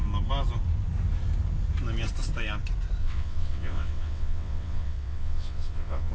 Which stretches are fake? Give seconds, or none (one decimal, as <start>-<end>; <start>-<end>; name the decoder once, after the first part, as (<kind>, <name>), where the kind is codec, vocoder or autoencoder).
3.0-6.1 (vocoder, WaveNeXt)